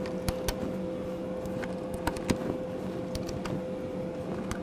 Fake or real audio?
real